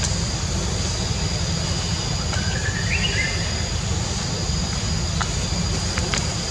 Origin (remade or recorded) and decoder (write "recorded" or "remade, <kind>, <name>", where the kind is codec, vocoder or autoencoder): recorded